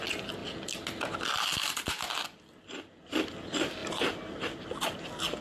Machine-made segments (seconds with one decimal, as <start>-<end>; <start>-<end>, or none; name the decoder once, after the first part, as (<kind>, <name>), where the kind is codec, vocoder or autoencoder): none